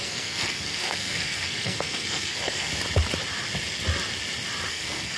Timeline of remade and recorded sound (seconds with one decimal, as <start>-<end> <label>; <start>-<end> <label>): 0.0-2.7 remade; 2.7-4.7 recorded; 4.7-5.2 remade